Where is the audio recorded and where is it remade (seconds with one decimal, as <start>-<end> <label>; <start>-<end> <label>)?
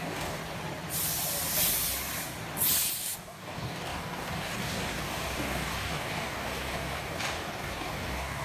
0.0-0.4 remade; 0.4-3.0 recorded; 3.0-8.4 remade